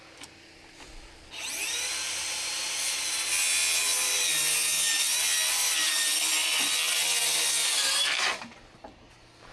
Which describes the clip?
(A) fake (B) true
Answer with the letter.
B